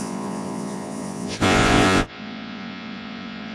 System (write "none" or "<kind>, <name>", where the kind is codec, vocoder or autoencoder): vocoder, Vocos